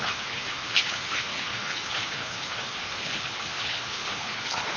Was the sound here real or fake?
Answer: fake